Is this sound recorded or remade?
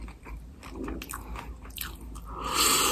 recorded